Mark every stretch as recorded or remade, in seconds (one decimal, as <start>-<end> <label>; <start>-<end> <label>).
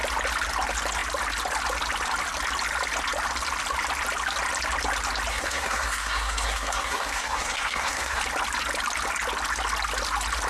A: 0.0-5.3 recorded; 5.3-8.2 remade; 8.2-10.5 recorded